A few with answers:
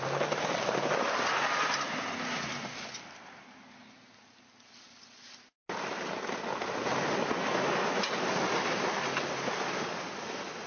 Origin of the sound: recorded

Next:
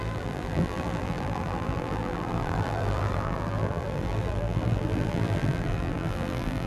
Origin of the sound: remade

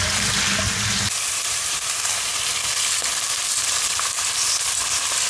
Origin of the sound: recorded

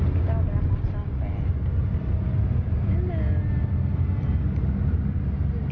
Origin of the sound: recorded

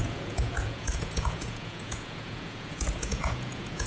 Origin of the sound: remade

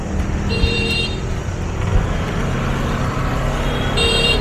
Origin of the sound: remade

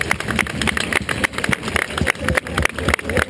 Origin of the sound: recorded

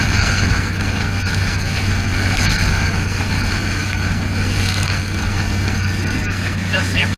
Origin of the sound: remade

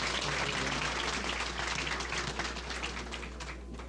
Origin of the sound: recorded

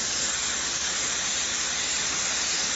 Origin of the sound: recorded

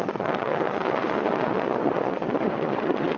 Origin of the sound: remade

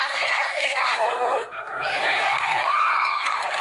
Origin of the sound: remade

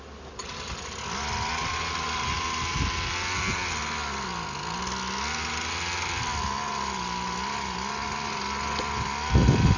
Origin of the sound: recorded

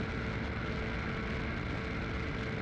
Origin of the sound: recorded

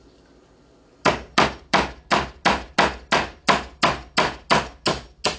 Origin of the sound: recorded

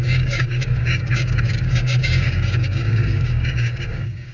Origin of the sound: remade